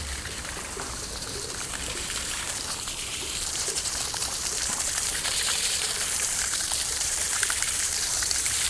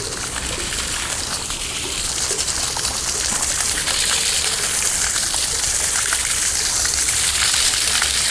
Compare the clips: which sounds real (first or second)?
second